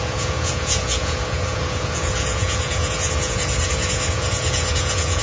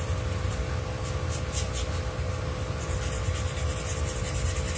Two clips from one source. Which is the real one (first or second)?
second